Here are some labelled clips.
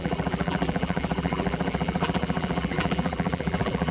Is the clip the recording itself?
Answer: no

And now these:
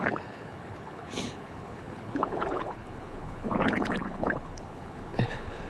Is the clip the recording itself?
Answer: no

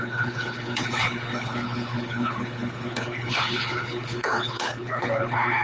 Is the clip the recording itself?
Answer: no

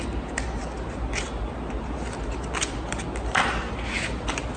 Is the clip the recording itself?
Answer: yes